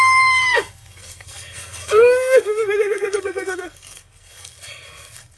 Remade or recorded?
remade